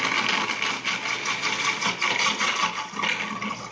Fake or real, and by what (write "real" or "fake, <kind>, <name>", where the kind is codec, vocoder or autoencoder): real